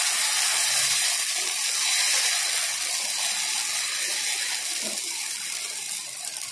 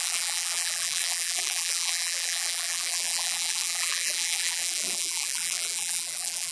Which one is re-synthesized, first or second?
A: second